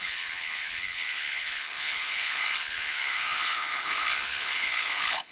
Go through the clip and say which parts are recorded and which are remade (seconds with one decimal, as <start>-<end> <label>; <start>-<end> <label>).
0.0-5.3 remade